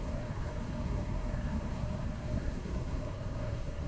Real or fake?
fake